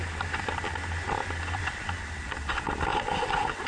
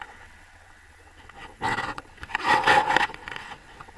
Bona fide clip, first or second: first